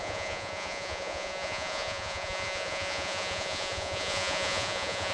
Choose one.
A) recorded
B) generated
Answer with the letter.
B